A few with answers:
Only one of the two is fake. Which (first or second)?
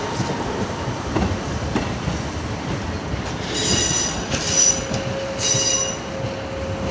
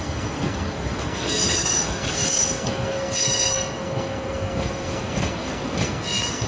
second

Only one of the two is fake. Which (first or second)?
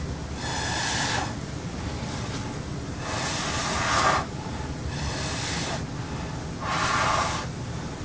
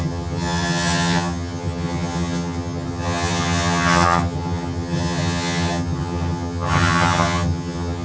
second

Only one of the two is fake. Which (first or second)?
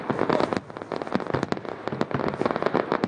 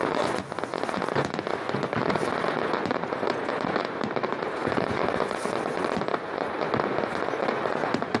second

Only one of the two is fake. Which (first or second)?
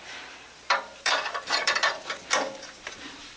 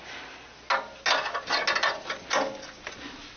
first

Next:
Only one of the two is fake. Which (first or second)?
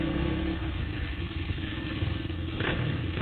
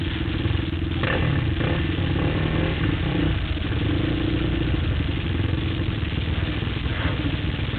first